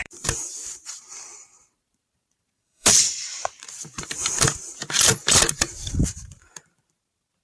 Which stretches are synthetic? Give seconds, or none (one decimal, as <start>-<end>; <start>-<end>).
0.0-7.4